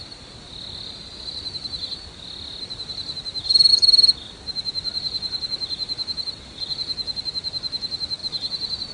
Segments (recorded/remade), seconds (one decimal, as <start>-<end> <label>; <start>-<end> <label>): 0.0-8.9 recorded